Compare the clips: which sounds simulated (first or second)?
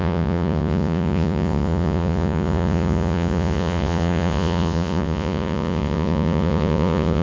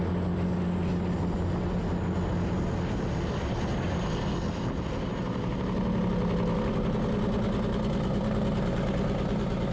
first